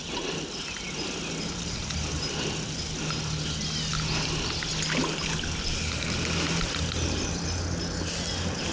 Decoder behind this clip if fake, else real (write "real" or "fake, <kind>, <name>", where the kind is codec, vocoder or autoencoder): real